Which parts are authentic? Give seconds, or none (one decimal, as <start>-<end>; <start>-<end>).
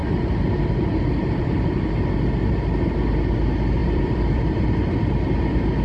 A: 0.0-3.8; 4.7-5.8